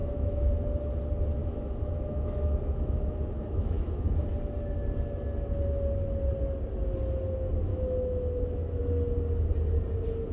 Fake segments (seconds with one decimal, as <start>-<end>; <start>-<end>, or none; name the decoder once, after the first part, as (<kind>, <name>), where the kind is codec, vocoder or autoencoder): 0.0-0.5 (autoencoder, DAC-VAE); 1.4-4.1; 7.7-8.8